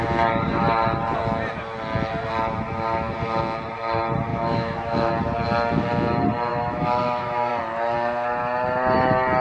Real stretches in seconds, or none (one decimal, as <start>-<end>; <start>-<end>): 0.0-4.3; 5.1-6.5; 7.5-9.4